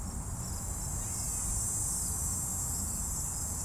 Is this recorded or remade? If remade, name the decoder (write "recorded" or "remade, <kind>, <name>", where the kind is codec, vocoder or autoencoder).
recorded